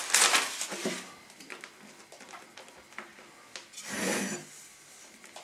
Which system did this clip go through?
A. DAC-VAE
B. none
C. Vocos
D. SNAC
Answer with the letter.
B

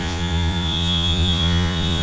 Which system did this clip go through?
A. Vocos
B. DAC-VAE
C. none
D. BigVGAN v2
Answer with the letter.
A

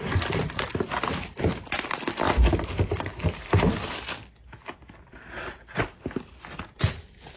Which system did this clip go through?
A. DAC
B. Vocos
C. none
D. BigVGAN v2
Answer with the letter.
C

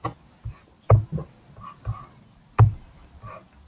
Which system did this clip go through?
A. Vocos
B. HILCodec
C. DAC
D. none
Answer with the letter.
D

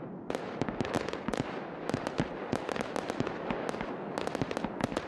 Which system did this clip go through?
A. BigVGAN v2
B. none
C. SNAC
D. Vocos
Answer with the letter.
B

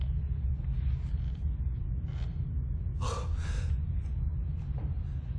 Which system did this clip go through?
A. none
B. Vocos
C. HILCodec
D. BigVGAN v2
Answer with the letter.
A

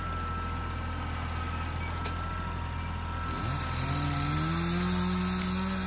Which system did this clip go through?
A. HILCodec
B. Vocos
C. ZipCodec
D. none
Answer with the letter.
D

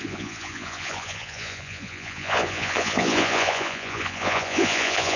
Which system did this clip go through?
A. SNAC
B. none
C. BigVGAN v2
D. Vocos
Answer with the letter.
D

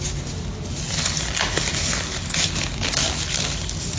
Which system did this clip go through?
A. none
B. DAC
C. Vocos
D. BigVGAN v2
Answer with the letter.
A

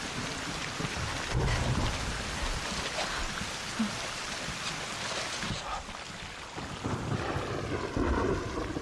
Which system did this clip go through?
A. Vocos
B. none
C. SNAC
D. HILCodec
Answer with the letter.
B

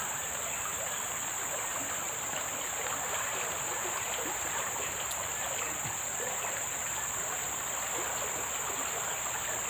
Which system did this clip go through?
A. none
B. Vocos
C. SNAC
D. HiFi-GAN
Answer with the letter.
A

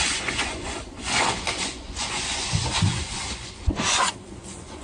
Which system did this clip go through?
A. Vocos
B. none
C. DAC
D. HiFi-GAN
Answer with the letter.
A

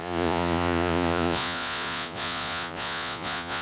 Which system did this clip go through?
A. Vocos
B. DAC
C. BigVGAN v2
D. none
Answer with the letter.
A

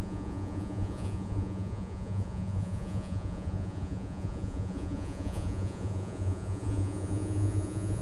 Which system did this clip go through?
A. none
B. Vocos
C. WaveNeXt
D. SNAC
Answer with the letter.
B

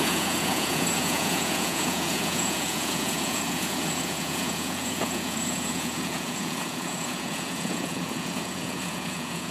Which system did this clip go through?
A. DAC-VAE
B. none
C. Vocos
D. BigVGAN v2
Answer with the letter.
C